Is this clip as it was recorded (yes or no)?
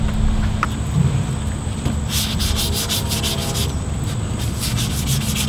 yes